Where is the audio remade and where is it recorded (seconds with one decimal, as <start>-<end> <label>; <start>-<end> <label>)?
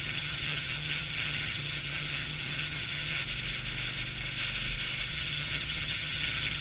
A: 0.0-3.2 remade; 3.2-5.1 recorded; 5.1-6.6 remade